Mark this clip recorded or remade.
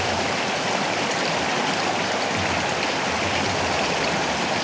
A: recorded